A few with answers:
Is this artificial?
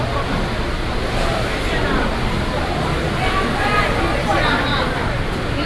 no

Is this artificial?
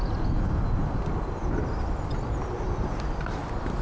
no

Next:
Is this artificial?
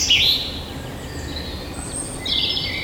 no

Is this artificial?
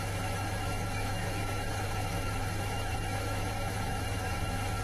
yes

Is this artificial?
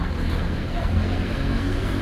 yes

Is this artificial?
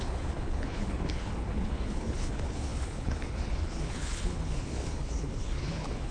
yes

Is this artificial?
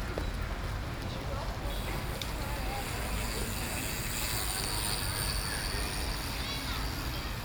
no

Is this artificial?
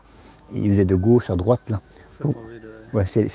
yes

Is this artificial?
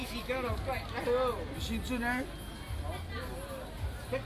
no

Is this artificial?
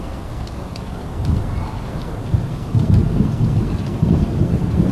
yes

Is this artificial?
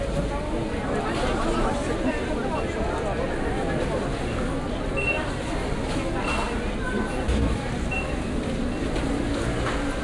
no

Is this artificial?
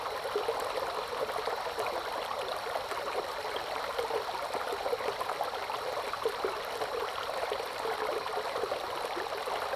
no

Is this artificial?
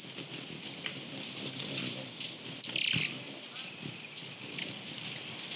no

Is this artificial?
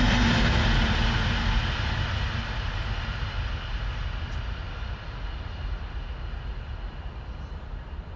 no